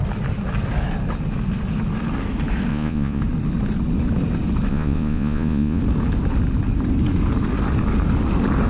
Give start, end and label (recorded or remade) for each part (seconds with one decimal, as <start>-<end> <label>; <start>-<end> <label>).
0.0-2.7 recorded; 2.7-3.2 remade; 3.2-4.7 recorded; 4.7-5.8 remade; 5.8-8.7 recorded